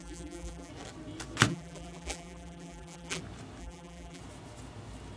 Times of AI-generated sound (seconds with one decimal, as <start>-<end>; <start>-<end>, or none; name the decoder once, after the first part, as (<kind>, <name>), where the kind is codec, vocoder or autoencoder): 0.0-0.7 (vocoder, BigVGAN v2); 1.5-3.2; 3.6-4.2